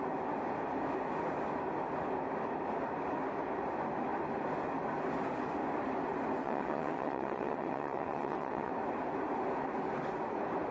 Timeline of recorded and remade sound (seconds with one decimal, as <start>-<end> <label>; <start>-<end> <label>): 0.0-6.4 recorded; 6.4-8.7 remade; 8.7-10.7 recorded